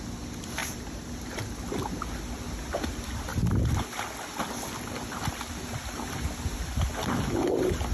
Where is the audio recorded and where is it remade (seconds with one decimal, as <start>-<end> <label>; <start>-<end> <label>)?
0.0-0.6 recorded; 0.6-1.6 remade; 1.6-7.9 recorded